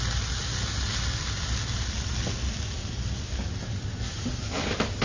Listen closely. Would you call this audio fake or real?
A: real